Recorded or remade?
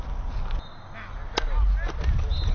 recorded